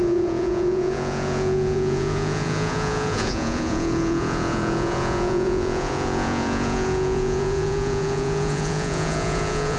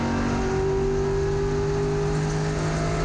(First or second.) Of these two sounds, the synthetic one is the first